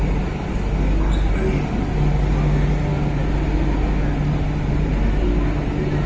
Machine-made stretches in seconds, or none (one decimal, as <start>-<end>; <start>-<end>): none